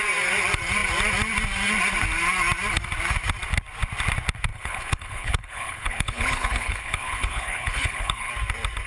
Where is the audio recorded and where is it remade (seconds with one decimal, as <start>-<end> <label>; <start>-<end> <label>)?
0.0-4.5 recorded; 4.5-8.3 remade; 8.3-8.9 recorded